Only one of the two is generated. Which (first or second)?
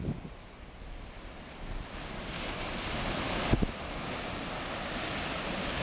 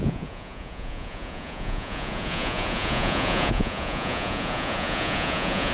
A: second